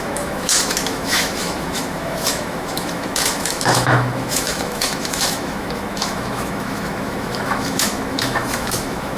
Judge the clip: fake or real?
fake